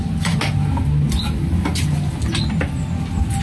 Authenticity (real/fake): real